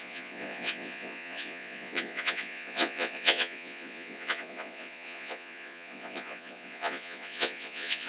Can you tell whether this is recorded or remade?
remade